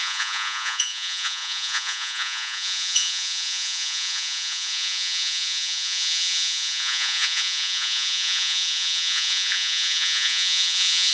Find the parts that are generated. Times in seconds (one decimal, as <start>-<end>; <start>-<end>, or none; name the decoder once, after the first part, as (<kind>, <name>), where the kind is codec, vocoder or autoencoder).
0.0-11.1 (vocoder, Vocos)